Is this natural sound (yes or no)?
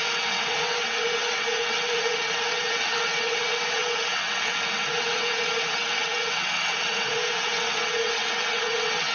no